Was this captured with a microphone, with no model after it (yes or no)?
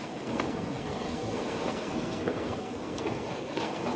no